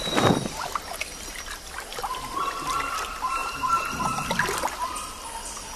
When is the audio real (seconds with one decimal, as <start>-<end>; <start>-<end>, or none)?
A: 0.0-3.4; 4.0-5.8